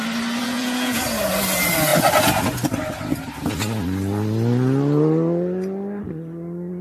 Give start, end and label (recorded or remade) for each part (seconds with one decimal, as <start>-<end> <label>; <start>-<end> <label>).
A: 0.0-0.4 recorded; 0.4-1.0 remade; 1.0-6.8 recorded

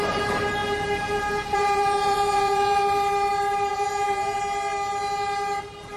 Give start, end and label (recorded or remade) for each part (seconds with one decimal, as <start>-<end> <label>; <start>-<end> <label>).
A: 0.0-0.6 recorded; 0.6-2.8 remade; 2.8-3.7 recorded; 3.7-4.4 remade; 4.4-6.0 recorded

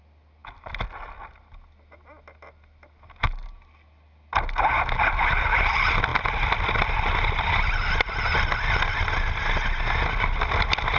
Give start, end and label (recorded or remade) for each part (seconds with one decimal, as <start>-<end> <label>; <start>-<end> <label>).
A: 0.0-11.0 recorded

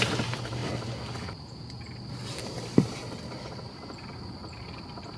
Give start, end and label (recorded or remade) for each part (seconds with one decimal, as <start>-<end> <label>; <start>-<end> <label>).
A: 0.0-5.2 recorded

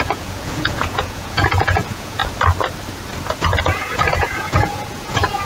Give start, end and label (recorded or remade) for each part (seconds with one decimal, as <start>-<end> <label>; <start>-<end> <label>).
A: 0.0-2.2 remade; 2.2-3.6 recorded; 3.6-5.5 remade

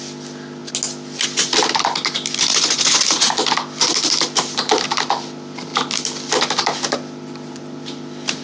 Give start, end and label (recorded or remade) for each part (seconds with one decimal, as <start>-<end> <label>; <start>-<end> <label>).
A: 0.0-2.5 recorded; 2.5-3.3 remade; 3.3-8.4 recorded